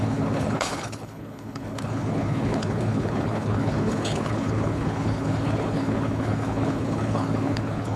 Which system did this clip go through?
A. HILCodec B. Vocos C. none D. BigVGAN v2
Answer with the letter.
A